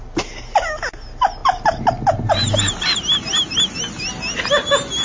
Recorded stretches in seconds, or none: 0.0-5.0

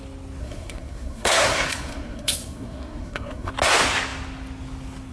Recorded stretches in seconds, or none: 0.0-0.4; 3.5-5.1

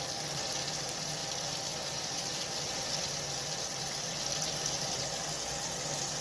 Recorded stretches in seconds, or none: 0.0-6.2

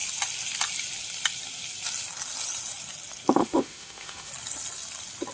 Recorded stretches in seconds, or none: 0.0-3.4; 4.3-5.3

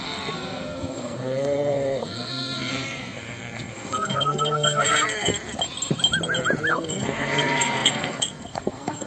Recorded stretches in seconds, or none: 5.3-6.7

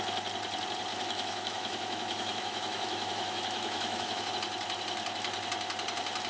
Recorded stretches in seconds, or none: 0.0-0.9; 4.3-6.3